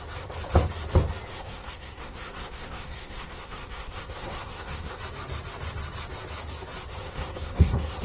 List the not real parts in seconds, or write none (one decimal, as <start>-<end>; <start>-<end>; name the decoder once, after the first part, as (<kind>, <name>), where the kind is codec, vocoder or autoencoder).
1.3-5.0 (codec, SNAC); 7.0-8.0